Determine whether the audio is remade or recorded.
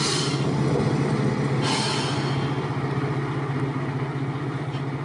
recorded